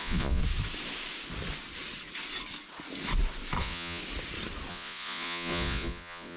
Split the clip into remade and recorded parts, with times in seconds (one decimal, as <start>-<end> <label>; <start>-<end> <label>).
0.0-0.4 remade; 0.4-3.6 recorded; 3.6-4.0 remade; 4.0-4.7 recorded; 4.7-6.4 remade